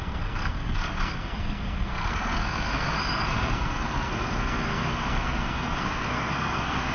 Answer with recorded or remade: remade